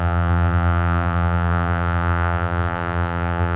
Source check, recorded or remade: remade